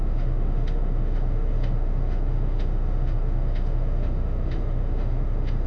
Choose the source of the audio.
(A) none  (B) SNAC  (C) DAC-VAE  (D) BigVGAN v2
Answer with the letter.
C